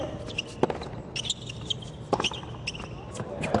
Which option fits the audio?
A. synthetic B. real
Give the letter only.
B